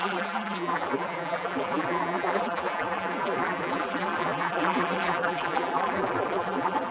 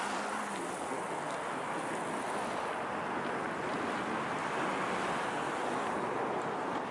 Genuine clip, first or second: second